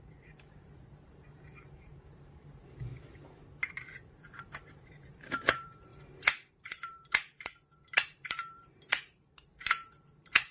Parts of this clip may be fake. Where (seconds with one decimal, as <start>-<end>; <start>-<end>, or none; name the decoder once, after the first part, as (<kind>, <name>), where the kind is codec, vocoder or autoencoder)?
0.0-2.9 (vocoder, BigVGAN v2); 3.7-5.9; 6.5-10.5